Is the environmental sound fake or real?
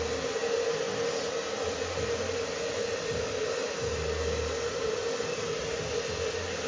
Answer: real